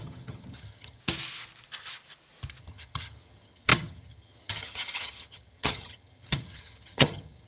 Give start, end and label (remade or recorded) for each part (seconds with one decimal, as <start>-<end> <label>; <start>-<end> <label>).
0.0-1.0 remade; 1.0-2.6 recorded; 2.6-7.5 remade